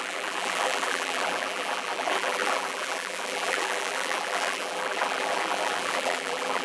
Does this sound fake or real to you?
fake